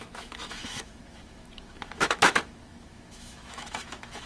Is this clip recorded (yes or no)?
no